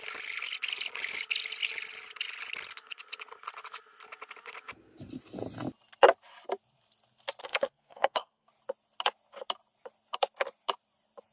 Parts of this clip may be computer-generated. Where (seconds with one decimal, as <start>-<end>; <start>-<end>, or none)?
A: 7.4-8.5